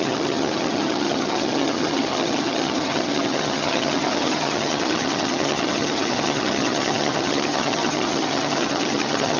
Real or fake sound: fake